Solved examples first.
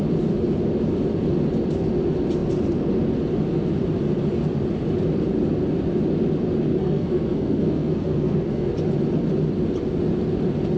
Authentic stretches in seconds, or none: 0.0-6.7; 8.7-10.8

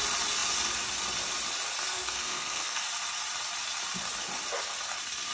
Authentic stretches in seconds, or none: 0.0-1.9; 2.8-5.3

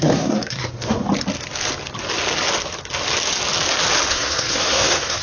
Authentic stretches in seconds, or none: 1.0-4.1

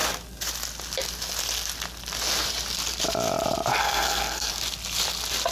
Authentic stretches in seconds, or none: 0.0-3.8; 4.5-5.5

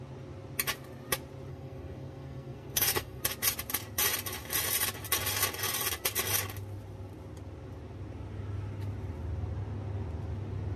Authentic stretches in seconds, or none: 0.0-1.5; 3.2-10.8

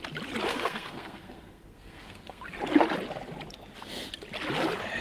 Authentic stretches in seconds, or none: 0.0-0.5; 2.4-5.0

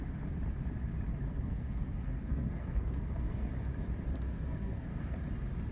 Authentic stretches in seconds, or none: 0.0-1.3; 3.5-4.1; 5.2-5.7

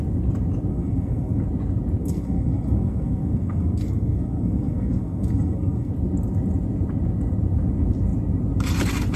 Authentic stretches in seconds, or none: 0.0-0.7; 1.4-2.0; 5.9-9.2